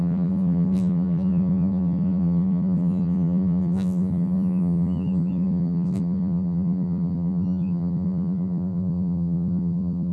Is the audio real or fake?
fake